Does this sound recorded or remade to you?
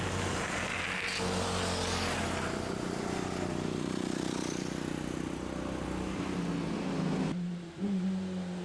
recorded